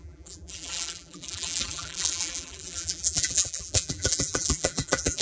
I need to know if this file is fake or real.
fake